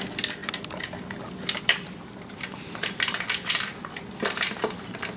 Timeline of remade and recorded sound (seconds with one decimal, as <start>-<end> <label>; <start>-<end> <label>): 0.0-0.4 remade; 0.4-1.6 recorded; 1.6-5.2 remade